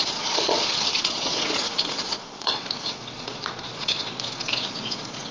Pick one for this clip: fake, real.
fake